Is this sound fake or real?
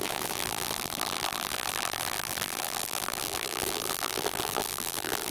fake